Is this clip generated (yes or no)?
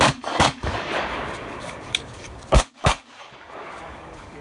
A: yes